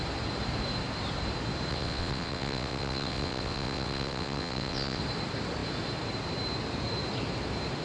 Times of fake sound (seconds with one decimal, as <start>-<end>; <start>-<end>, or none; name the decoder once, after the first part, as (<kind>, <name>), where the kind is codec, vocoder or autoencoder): 1.7-5.0 (vocoder, WaveNeXt)